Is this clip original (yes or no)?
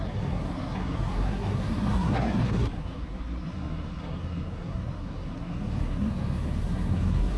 no